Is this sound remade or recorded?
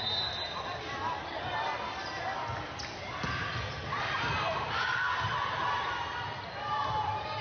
recorded